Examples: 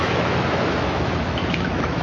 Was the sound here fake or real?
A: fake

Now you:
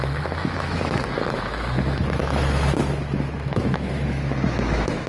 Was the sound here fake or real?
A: fake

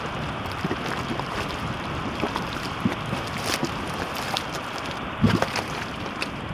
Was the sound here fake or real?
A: real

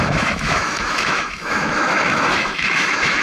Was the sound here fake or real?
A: fake